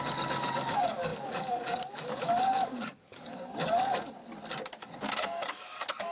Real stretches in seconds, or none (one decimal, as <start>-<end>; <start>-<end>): 4.2-4.7